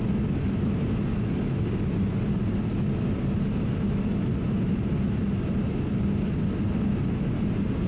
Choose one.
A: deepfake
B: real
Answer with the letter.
B